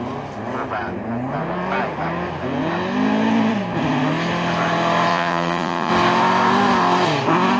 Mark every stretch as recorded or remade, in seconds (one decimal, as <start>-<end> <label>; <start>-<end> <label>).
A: 0.0-5.1 recorded; 5.1-5.9 remade; 5.9-7.6 recorded